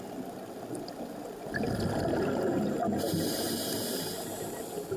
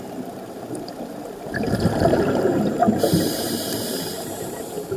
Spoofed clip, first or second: second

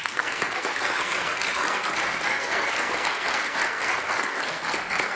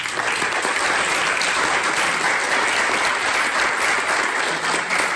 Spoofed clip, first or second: first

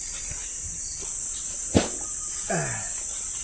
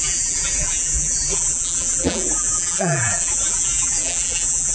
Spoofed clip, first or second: second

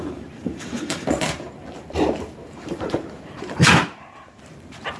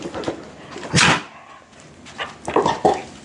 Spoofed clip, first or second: first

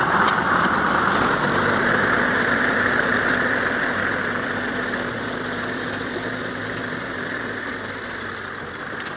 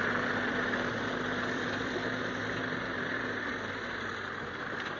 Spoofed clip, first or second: first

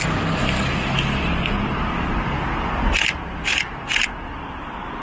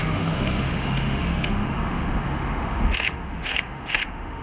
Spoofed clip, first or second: second